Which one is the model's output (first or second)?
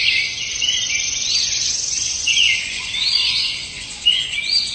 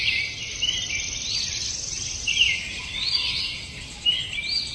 first